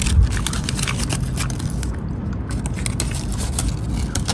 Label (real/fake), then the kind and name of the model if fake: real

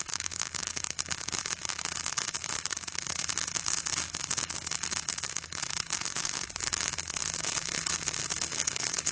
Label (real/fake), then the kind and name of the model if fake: fake, codec, DAC